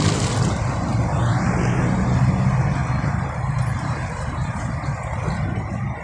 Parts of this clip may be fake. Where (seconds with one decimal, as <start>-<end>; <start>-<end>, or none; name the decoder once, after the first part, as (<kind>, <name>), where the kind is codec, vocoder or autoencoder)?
2.8-4.7 (vocoder, BigVGAN v2)